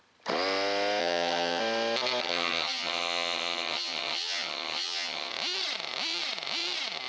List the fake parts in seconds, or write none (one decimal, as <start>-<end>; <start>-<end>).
1.0-1.6; 2.2-5.3